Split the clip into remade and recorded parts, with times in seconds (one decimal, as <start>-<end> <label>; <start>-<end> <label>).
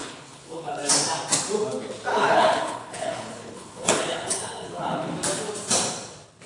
0.0-0.8 remade; 0.8-2.1 recorded; 2.1-5.1 remade; 5.1-6.5 recorded